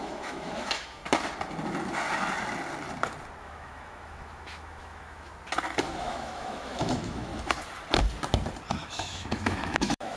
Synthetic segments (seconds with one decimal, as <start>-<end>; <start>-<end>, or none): 0.0-1.0; 3.4-5.3; 5.9-7.3; 8.7-10.2